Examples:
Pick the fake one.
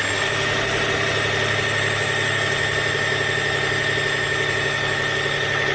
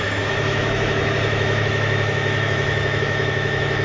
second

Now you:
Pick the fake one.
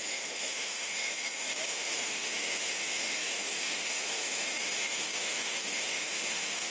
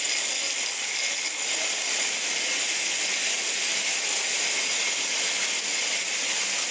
first